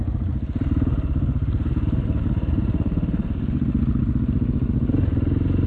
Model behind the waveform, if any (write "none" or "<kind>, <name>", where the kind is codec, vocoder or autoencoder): none